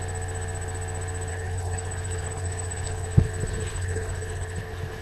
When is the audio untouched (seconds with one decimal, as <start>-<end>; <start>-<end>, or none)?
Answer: 0.0-1.3; 3.3-3.7